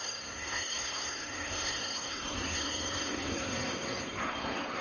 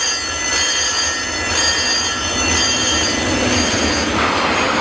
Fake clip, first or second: first